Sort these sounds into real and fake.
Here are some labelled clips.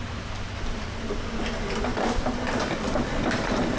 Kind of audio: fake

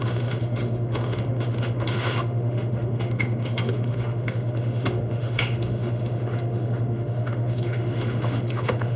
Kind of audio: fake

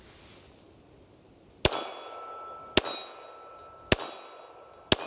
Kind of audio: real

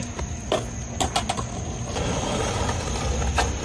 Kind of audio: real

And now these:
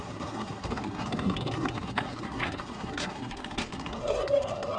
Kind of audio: fake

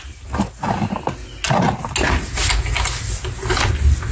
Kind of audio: real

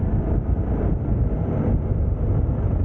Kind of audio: real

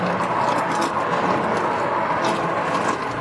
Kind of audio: real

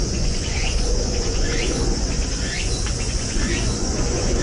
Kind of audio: fake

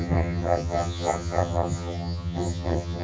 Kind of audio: fake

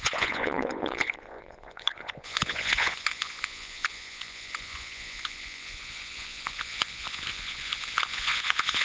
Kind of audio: fake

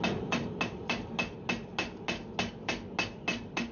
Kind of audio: real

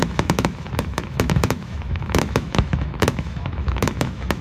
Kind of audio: fake